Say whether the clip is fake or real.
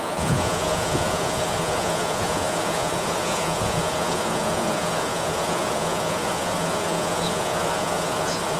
fake